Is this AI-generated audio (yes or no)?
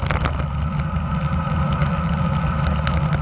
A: no